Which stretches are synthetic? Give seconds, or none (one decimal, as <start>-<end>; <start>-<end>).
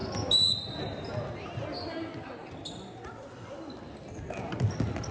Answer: none